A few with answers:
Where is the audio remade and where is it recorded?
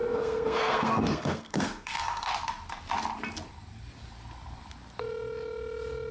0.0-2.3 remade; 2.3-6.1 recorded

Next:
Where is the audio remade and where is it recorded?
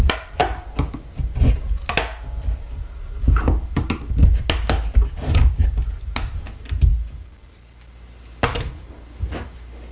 0.0-9.9 recorded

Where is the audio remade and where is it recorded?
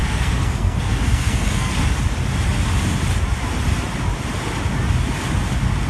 0.0-1.7 remade; 1.7-5.9 recorded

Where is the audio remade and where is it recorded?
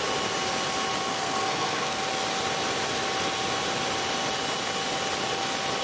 0.0-1.1 recorded; 1.1-2.0 remade; 2.0-5.8 recorded